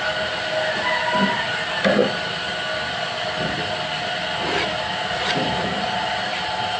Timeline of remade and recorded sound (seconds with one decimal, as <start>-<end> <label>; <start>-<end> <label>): 0.0-6.8 recorded